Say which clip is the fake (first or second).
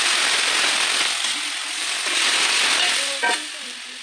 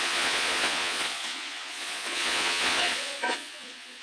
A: second